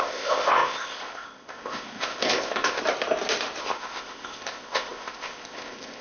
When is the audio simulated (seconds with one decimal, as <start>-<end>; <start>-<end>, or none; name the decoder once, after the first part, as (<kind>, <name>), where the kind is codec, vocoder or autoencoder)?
0.0-2.8 (codec, ZipCodec); 3.6-6.0